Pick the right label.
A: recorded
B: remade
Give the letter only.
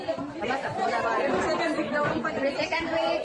A